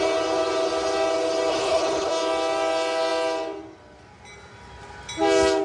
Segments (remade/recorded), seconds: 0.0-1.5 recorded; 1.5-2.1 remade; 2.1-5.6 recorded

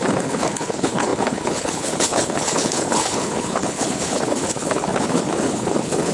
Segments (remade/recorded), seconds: 0.0-6.1 remade